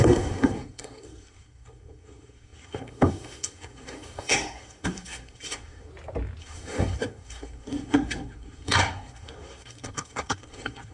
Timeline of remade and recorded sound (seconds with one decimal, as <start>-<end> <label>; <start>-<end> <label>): 0.0-5.9 remade; 5.9-6.4 recorded; 6.4-10.9 remade